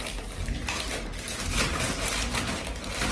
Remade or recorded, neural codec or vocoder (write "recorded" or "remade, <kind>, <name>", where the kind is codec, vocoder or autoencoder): recorded